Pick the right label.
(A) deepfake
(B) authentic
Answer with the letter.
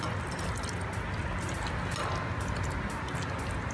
B